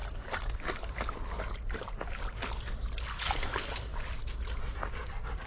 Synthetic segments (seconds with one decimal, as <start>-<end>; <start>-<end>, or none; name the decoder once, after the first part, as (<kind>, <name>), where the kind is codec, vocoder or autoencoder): none